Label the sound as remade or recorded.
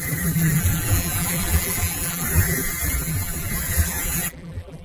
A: remade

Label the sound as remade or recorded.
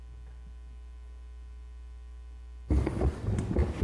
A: recorded